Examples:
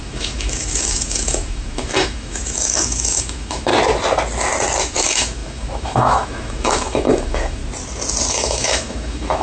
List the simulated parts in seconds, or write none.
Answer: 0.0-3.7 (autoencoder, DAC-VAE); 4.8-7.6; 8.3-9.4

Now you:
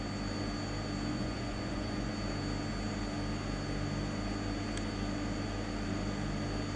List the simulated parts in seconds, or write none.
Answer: 1.1-2.1 (vocoder, Vocos)

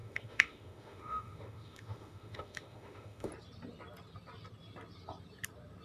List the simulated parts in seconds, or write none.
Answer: 0.0-3.3 (autoencoder, DAC-VAE)